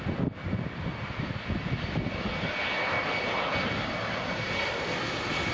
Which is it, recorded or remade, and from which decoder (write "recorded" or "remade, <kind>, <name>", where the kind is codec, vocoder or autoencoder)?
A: recorded